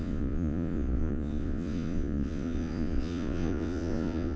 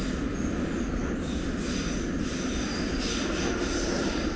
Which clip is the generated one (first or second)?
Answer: first